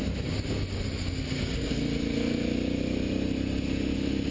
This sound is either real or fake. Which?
real